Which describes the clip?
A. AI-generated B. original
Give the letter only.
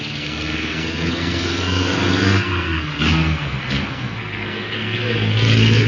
A